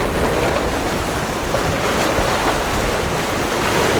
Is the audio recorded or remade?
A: recorded